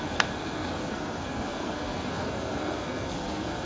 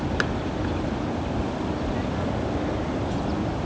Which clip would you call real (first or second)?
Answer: second